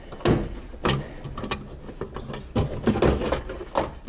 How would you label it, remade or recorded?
recorded